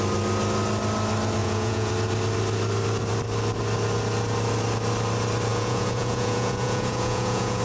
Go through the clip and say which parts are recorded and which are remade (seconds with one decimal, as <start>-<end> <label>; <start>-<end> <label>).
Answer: 0.0-1.4 recorded; 1.4-1.9 remade; 1.9-5.5 recorded; 5.5-7.6 remade